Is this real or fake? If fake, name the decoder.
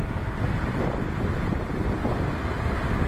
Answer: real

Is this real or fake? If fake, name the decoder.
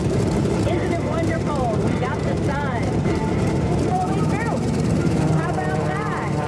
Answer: fake, vocoder, BigVGAN v2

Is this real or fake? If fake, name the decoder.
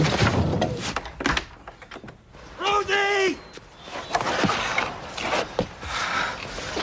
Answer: real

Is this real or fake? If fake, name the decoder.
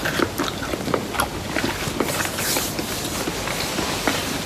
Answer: real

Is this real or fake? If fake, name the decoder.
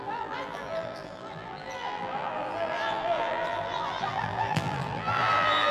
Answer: fake, vocoder, BigVGAN v2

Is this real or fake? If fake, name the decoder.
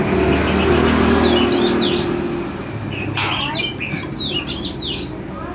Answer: real